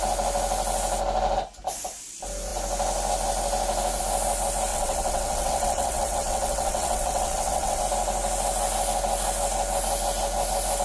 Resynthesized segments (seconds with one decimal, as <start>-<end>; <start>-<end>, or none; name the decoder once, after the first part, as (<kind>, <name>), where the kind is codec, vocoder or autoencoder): 4.7-7.8 (vocoder, WaveNeXt)